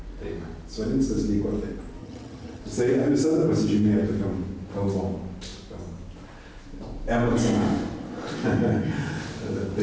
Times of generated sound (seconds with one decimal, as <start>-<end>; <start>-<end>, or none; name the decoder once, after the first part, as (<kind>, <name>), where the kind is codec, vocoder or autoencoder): 2.0-2.6 (vocoder, HiFi-GAN)